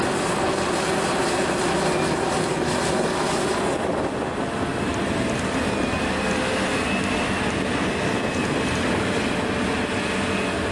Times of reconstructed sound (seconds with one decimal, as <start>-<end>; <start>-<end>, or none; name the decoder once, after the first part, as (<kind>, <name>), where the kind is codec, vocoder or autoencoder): none

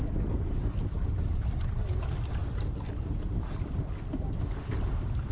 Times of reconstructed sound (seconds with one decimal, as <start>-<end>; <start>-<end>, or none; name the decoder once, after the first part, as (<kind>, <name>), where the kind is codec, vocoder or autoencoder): none

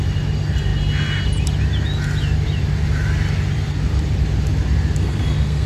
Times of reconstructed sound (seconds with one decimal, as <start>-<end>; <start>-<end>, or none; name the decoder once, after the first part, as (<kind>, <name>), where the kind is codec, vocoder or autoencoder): 5.0-5.7 (codec, SNAC)